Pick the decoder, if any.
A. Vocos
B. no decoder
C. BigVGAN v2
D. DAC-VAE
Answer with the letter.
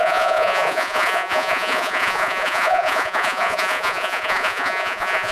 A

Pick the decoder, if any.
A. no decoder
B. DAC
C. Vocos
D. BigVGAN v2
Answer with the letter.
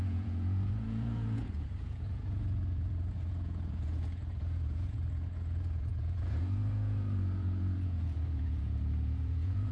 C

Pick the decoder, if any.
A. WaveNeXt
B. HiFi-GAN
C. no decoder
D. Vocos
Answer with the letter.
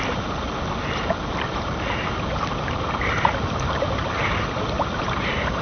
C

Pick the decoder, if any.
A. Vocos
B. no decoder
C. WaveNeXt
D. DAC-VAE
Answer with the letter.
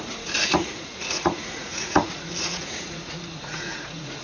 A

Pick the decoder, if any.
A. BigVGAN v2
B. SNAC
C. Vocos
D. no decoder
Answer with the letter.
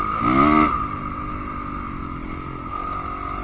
D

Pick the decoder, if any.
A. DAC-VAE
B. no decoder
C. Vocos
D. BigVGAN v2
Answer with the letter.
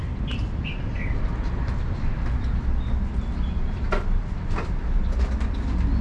B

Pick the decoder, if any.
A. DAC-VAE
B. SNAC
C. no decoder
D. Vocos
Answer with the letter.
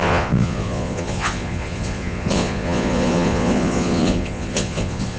D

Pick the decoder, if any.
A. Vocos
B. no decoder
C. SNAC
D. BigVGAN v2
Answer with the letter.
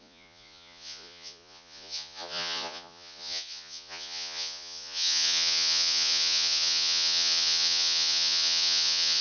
A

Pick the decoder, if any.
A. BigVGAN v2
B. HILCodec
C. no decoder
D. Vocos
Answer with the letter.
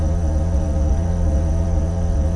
D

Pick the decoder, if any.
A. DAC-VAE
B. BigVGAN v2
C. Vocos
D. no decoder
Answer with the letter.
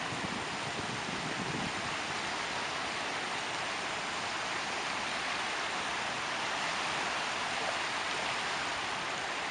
D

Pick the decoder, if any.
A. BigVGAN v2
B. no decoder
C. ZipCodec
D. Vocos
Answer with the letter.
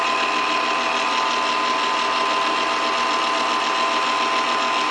B